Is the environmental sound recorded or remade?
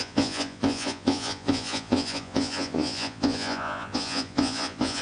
remade